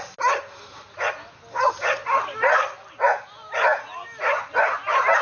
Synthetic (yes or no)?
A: no